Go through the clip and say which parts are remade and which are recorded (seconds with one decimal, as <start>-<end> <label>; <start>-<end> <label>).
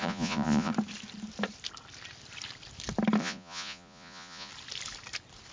0.0-0.7 remade; 0.7-3.2 recorded; 3.2-4.5 remade; 4.5-5.5 recorded